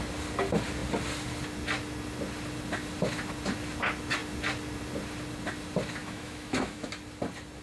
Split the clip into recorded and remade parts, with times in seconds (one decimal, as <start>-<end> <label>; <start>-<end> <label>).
0.0-6.0 recorded; 6.0-6.9 remade; 6.9-7.6 recorded